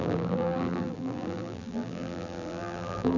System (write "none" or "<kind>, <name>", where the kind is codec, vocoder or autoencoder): vocoder, BigVGAN v2